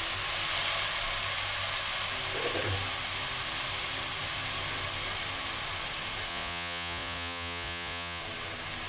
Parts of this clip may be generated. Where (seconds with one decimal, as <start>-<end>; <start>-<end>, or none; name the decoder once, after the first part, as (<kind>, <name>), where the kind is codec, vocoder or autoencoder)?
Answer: 6.3-8.2 (vocoder, Vocos)